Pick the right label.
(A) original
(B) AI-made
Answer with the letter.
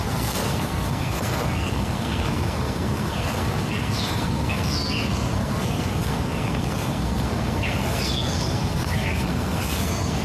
B